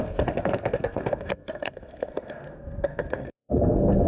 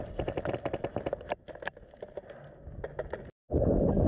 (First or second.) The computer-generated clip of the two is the first